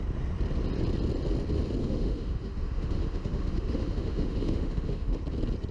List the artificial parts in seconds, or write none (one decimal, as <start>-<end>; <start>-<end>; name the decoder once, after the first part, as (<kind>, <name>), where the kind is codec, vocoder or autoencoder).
1.8-5.2 (autoencoder, DAC-VAE)